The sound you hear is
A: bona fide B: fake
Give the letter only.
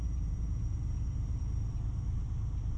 B